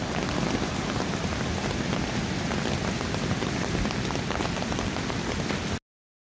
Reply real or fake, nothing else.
real